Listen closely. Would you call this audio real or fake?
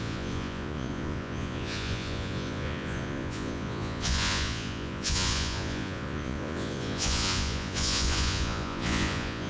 fake